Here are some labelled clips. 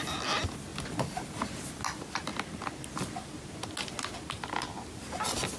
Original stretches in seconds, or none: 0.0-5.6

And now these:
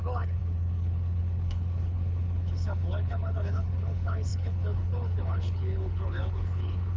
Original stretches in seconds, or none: none

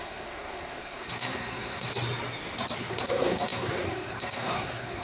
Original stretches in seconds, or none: 1.9-2.9

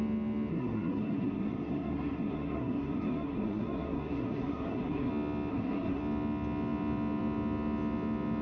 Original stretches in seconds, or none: 0.0-0.5; 5.1-5.5; 6.0-8.4

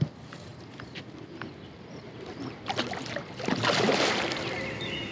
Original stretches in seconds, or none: 0.0-0.5; 3.6-5.1

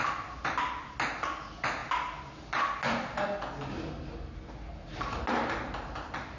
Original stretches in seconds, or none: 0.0-6.4